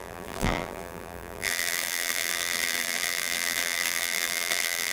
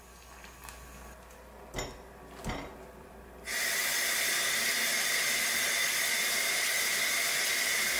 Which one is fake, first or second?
first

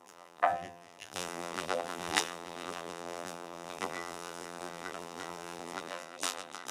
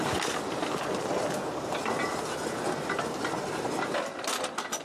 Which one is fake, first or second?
first